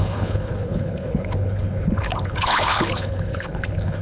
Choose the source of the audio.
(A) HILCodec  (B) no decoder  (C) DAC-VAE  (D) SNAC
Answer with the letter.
A